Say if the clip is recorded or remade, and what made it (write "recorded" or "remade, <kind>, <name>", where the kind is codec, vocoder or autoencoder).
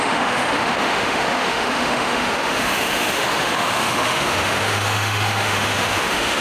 remade, autoencoder, DAC-VAE